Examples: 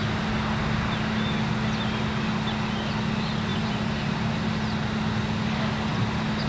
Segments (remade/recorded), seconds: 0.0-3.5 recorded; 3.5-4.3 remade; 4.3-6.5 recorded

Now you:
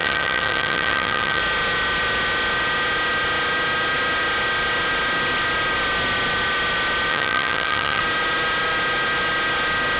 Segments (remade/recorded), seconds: 0.0-1.4 remade; 1.4-7.1 recorded; 7.1-8.0 remade; 8.0-10.0 recorded

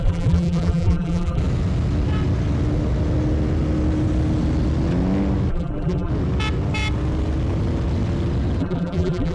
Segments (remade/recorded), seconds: 0.0-1.4 remade; 1.4-5.5 recorded; 5.5-6.1 remade; 6.1-8.6 recorded; 8.6-9.3 remade

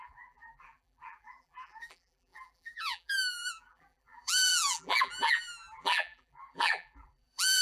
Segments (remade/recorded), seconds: 0.0-7.6 remade

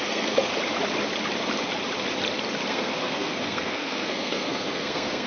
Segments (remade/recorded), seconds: 0.0-0.5 remade; 0.5-2.7 recorded; 2.7-5.3 remade